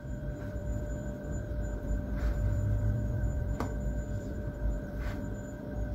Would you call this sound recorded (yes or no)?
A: no